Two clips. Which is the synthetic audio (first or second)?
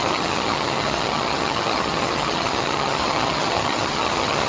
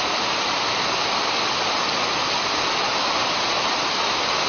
first